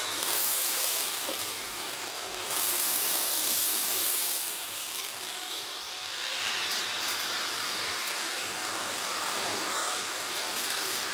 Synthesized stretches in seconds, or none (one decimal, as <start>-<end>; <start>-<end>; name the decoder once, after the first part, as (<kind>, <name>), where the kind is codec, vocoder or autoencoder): 0.0-6.5 (codec, DAC); 7.5-11.1